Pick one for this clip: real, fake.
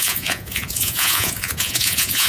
fake